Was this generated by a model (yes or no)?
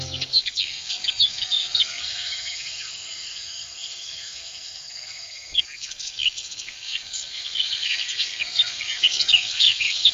yes